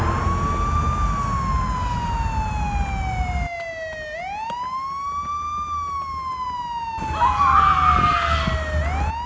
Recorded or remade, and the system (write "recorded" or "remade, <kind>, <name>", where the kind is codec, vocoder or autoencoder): recorded